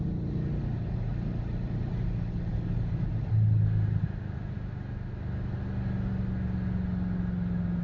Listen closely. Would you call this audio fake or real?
real